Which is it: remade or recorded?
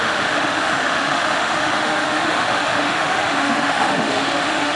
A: remade